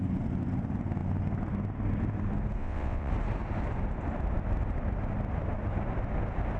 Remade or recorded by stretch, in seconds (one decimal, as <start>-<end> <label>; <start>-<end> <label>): 0.0-2.6 recorded; 2.6-3.1 remade; 3.1-6.6 recorded